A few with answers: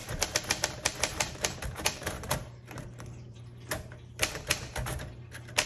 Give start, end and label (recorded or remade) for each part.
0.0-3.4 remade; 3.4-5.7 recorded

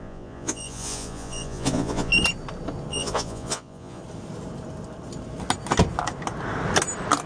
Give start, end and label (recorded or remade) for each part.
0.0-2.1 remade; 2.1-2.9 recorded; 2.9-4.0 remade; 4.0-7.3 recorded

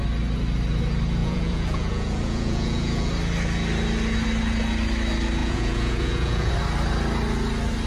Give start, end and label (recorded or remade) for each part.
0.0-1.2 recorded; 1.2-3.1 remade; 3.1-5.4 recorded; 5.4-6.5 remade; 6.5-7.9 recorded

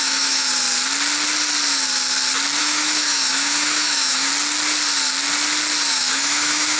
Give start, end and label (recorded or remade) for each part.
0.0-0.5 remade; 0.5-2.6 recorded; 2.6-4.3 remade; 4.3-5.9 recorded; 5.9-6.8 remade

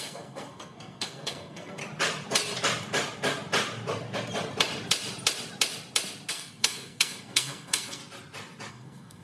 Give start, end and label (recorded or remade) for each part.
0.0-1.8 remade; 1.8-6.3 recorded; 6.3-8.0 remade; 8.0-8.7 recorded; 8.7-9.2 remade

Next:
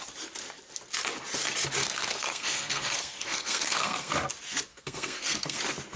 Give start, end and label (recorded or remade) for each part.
0.0-1.8 recorded; 1.8-4.1 remade; 4.1-4.7 recorded; 4.7-5.6 remade; 5.6-6.0 recorded

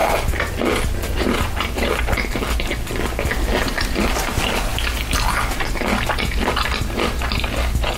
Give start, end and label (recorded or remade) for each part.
0.0-8.0 recorded

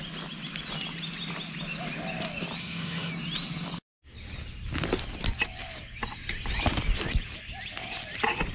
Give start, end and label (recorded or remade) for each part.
0.0-2.6 recorded; 2.6-3.1 remade; 3.1-8.5 recorded